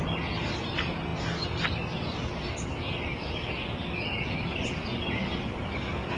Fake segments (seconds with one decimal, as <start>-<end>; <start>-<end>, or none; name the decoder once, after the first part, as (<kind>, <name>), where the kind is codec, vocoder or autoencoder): none